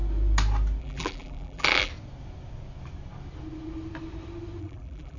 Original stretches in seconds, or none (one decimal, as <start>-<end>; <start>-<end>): 0.0-0.8; 1.9-4.6